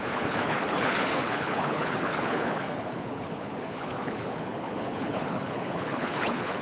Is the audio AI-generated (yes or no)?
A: yes